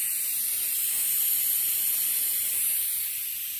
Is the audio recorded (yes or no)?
yes